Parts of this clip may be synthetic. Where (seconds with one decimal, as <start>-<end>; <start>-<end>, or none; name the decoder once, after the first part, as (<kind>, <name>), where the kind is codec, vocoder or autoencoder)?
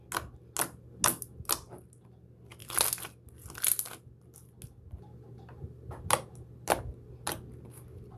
none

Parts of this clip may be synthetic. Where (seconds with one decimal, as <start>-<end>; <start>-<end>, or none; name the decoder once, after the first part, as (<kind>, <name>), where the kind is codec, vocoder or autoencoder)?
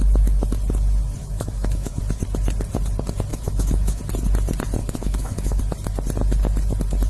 1.2-2.0 (autoencoder, DAC-VAE); 3.3-4.0; 4.8-5.6